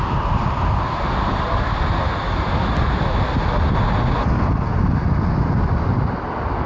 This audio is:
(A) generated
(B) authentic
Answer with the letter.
B